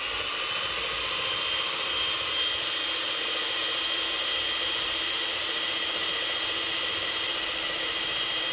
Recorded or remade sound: recorded